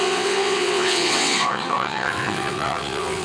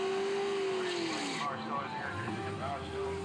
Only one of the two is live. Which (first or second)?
second